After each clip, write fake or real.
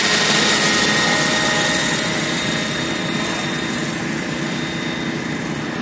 real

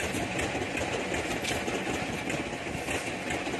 real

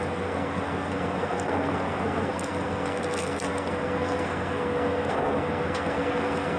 fake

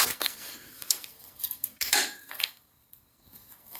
fake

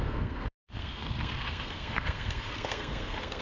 fake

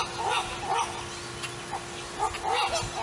real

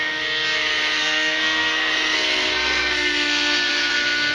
fake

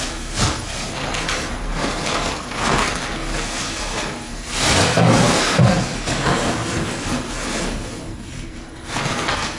fake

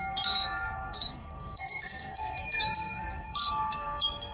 fake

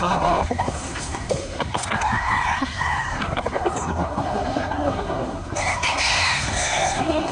fake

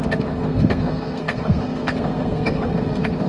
fake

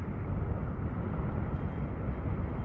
real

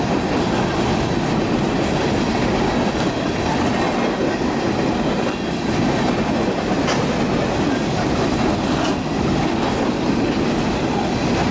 real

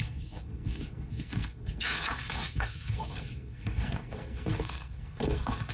fake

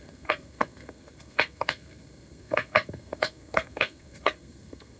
fake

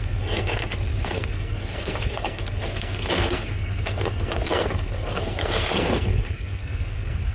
fake